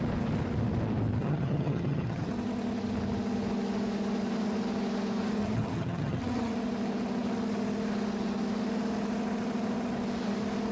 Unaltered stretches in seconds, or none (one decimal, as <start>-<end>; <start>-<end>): 0.0-1.2; 2.3-5.4; 6.5-10.7